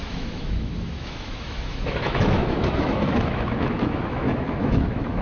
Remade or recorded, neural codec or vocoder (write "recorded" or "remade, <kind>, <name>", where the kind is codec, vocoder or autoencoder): remade, autoencoder, DAC-VAE